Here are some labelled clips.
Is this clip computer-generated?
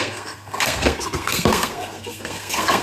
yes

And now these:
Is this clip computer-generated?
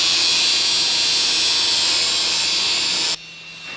no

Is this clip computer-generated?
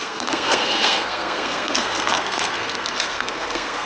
yes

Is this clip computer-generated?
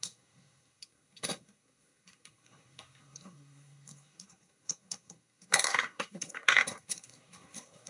yes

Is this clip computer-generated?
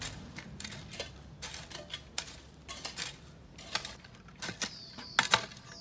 no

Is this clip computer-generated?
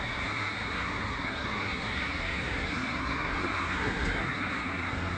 yes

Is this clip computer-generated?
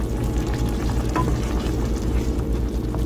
no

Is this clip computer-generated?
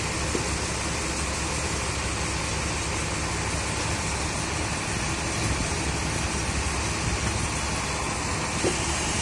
no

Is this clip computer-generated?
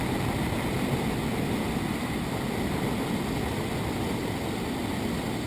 no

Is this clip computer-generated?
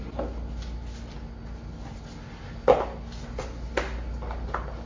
no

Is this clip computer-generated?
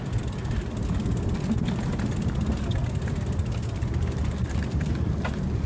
no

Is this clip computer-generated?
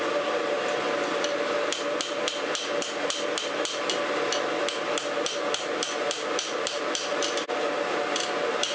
no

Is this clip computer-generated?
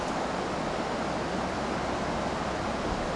no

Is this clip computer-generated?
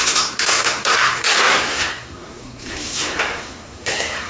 yes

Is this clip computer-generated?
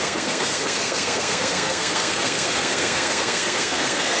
yes